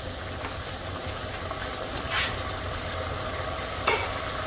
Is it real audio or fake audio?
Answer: real